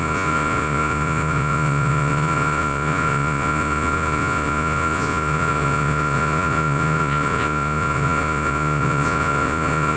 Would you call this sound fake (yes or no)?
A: yes